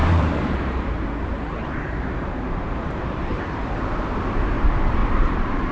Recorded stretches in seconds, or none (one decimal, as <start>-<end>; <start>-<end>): 3.4-5.0